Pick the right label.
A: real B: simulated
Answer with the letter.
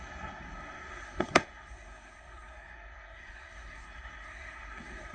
B